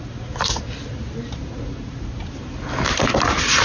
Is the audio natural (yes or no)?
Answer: yes